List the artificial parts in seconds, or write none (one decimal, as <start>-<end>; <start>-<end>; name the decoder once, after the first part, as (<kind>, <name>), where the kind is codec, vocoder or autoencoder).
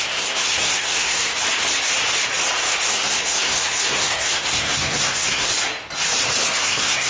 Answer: 0.0-1.3 (codec, SNAC); 2.9-5.5; 6.4-7.1